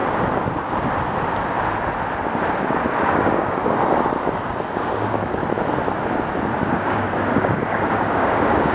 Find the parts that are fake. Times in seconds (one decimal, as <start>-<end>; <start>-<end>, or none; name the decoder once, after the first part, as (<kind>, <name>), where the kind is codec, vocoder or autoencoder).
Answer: 3.0-3.6 (codec, DAC); 4.7-5.4; 6.7-8.7